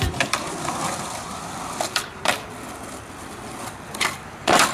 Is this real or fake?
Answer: fake